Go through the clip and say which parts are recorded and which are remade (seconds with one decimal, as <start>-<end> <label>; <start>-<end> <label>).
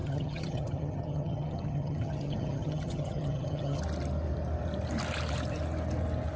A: 0.0-3.8 remade; 3.8-6.4 recorded